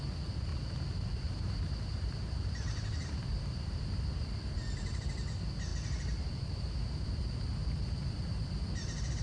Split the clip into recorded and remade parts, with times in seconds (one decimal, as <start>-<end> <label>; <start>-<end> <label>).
0.0-0.5 recorded; 0.5-3.8 remade; 3.8-5.7 recorded; 5.7-7.1 remade; 7.1-7.6 recorded; 7.6-8.5 remade; 8.5-9.2 recorded